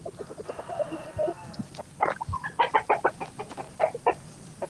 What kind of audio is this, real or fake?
real